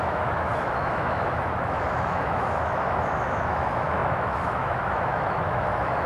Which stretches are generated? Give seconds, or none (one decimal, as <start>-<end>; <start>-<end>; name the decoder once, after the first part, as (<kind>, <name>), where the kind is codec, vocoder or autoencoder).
0.0-6.1 (autoencoder, DAC-VAE)